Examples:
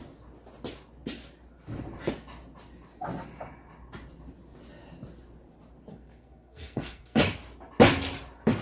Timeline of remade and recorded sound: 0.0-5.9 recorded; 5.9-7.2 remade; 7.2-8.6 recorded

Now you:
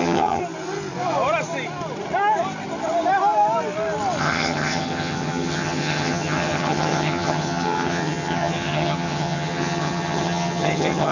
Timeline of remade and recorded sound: 0.0-0.4 remade; 0.4-4.2 recorded; 4.2-11.1 remade

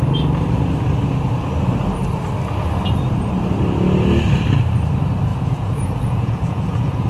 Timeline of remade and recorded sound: 0.0-5.3 recorded; 5.3-7.1 remade

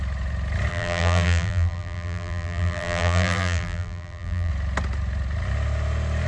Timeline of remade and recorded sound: 0.0-0.7 recorded; 0.7-4.5 remade; 4.5-6.3 recorded

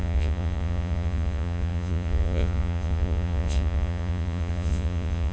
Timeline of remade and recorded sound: 0.0-5.3 remade

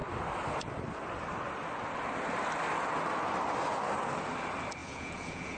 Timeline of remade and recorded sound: 0.0-4.8 recorded; 4.8-5.6 remade